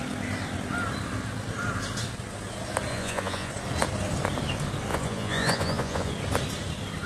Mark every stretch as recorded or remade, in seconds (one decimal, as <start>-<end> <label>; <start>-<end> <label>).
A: 0.0-2.9 recorded; 2.9-3.5 remade; 3.5-4.9 recorded; 4.9-6.1 remade; 6.1-7.1 recorded